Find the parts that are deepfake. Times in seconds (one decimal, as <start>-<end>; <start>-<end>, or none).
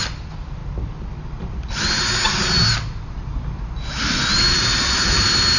0.0-0.6; 4.0-5.6